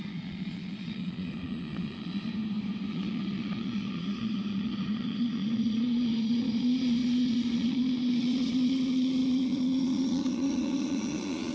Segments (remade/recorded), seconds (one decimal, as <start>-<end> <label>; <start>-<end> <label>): 0.0-2.3 remade; 2.3-2.9 recorded; 2.9-11.5 remade